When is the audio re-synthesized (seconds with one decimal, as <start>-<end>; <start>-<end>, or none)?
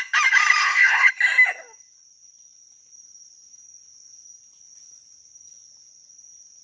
0.6-1.1